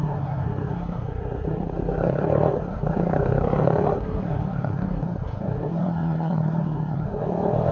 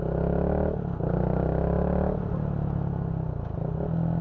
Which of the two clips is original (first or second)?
second